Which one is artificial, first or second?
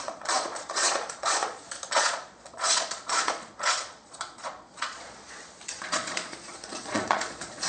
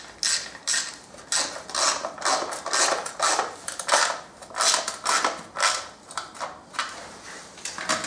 first